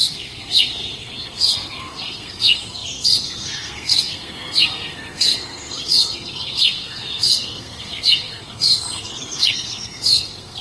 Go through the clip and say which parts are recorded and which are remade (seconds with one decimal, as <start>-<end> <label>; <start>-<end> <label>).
0.0-10.6 remade